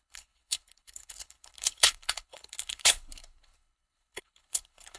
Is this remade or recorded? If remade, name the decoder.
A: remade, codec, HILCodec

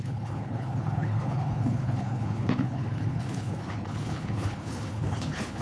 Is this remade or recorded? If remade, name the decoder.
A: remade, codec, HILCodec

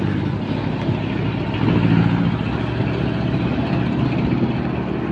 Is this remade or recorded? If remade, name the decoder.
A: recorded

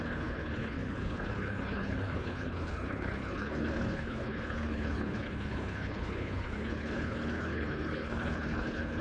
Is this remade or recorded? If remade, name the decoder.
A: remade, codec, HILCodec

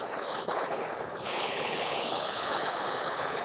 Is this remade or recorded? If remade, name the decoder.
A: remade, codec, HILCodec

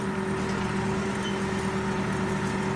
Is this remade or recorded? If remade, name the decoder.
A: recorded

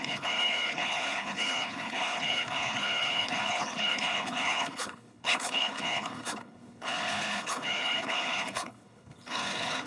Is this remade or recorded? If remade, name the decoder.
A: remade, codec, HILCodec